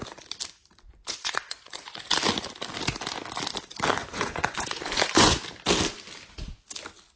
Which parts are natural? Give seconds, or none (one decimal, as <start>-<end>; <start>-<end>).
0.0-1.0; 2.1-4.0; 5.4-7.2